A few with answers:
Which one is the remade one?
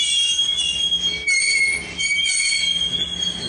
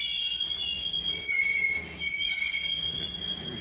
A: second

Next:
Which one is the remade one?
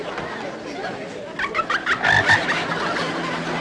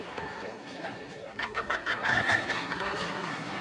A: second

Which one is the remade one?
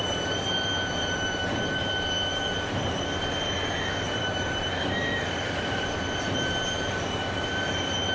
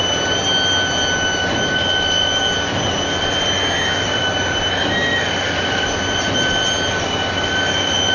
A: first